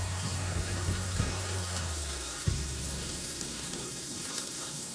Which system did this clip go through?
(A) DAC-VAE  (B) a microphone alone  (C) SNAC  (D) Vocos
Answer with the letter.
C